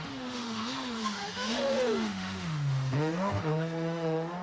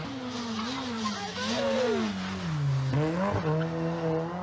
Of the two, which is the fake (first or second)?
first